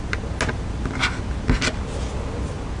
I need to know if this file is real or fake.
real